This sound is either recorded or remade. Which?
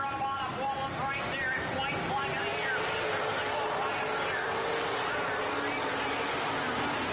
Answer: recorded